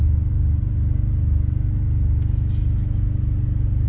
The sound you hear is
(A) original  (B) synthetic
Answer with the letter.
A